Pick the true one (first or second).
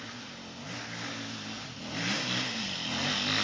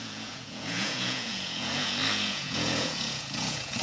first